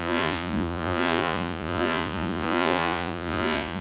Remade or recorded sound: remade